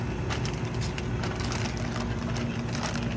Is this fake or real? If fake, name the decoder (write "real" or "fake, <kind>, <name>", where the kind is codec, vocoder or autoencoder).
real